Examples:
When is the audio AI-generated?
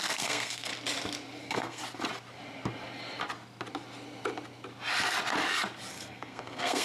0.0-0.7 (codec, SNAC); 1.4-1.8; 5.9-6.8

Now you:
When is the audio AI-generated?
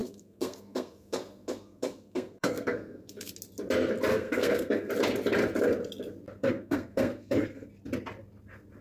0.0-3.3 (codec, SNAC); 4.1-4.9; 6.4-7.7